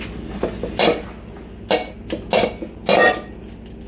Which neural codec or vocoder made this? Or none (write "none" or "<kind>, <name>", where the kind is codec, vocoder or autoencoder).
none